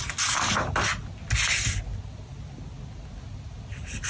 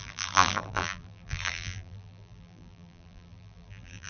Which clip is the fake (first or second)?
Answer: second